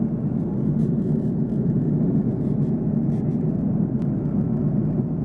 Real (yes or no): yes